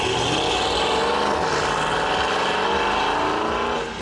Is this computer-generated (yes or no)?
no